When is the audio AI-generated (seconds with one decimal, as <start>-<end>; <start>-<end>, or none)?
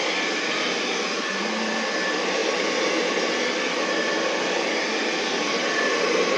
none